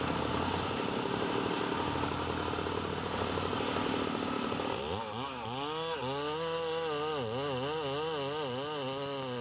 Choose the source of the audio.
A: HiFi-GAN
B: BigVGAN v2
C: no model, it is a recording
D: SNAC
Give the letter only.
C